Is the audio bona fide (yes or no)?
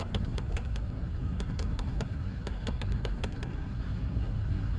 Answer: no